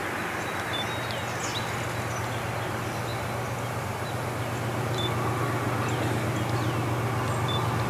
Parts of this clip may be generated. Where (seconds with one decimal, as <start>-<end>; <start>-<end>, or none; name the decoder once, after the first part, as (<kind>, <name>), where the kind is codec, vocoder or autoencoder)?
none